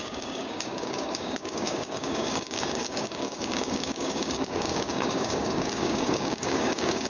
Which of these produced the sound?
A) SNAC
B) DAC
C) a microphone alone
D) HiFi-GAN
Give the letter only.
B